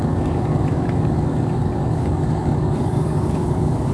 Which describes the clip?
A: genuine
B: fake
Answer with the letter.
B